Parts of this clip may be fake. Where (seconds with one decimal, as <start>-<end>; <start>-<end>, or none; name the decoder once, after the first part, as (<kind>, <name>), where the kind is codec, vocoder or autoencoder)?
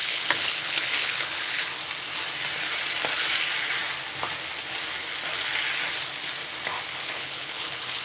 0.0-1.6 (codec, HILCodec); 6.9-8.0